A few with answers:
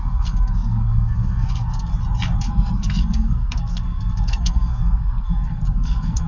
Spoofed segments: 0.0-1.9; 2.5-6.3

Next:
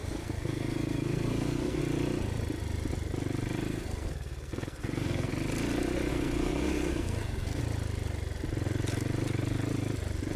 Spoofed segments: 0.0-1.8; 3.7-5.3; 6.1-7.6

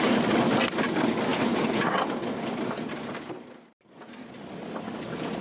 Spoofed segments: none

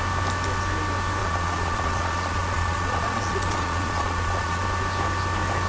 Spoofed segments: 1.2-4.6

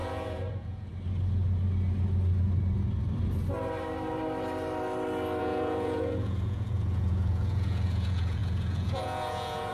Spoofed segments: 0.0-0.9; 5.4-9.7

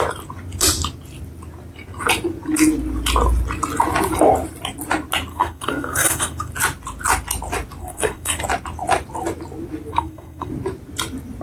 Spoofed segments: 5.3-6.5; 7.8-8.4; 9.9-10.5

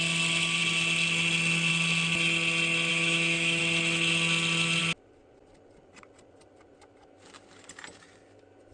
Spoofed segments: 2.9-3.6

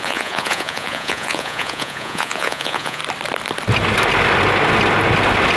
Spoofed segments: 0.0-3.0